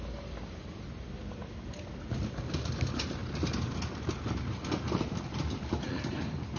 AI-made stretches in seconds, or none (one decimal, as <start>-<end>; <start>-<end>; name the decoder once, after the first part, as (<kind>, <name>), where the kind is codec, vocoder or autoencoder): none